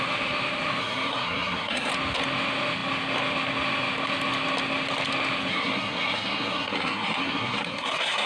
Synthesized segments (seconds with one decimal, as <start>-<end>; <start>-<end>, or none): 0.8-1.9; 5.5-8.3